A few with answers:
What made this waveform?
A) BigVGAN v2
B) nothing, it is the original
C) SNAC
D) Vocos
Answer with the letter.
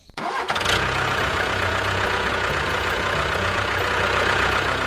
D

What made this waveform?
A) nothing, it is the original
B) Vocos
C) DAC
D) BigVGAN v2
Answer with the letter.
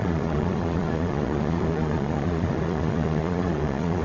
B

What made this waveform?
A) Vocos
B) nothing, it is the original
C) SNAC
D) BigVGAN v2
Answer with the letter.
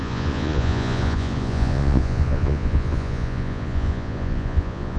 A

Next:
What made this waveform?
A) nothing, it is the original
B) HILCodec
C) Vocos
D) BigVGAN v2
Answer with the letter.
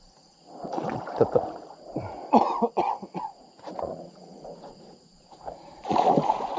C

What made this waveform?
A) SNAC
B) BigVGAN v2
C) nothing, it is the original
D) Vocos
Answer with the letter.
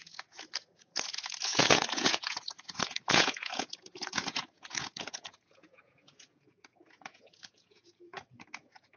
D